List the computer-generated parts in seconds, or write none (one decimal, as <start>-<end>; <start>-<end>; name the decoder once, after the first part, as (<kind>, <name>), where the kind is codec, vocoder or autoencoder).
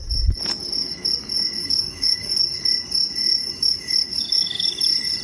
1.6-2.4 (codec, DAC); 3.4-4.7